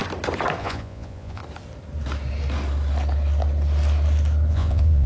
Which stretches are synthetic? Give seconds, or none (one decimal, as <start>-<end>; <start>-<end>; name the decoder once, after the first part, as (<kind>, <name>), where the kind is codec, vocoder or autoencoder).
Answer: 0.6-1.4 (vocoder, Vocos); 4.5-5.1